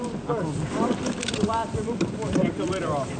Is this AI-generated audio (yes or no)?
no